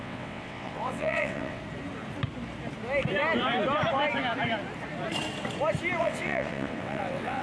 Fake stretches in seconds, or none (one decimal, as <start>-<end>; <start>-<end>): 0.0-1.6; 6.0-7.4